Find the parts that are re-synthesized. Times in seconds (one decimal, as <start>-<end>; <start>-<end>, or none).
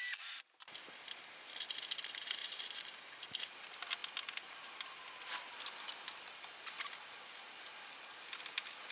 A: 2.4-3.6